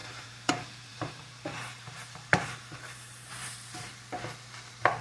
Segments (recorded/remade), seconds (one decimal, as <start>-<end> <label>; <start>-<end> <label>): 0.0-0.5 remade; 0.5-0.9 recorded; 0.9-3.9 remade; 3.9-5.0 recorded